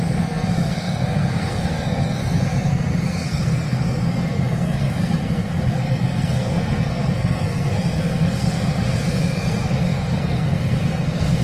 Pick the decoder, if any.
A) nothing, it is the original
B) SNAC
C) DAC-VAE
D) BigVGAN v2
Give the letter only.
B